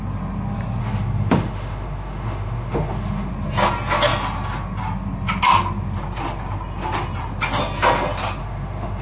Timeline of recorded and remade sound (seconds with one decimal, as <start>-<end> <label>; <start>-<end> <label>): 0.0-0.8 recorded; 0.8-3.3 remade; 3.3-8.4 recorded; 8.4-9.0 remade